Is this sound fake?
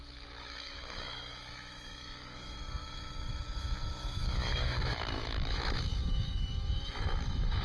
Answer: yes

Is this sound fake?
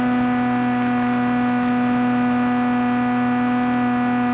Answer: no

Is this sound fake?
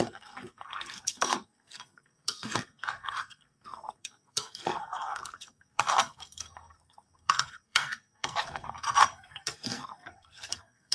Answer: yes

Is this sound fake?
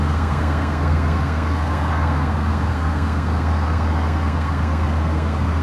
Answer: yes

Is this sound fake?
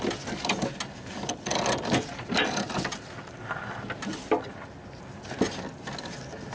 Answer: no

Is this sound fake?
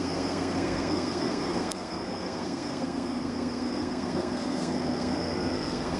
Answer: yes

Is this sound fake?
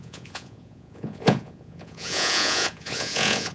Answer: yes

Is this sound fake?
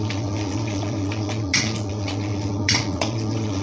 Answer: yes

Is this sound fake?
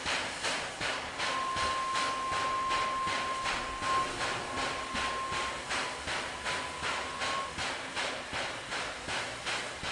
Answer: no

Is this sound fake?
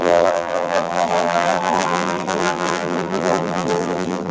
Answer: yes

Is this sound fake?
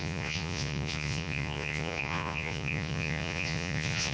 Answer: yes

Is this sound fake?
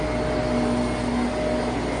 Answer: no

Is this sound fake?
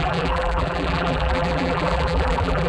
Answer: yes